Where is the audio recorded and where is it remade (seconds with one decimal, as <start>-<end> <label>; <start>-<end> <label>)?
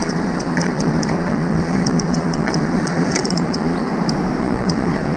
0.0-3.9 remade; 3.9-4.4 recorded; 4.4-5.2 remade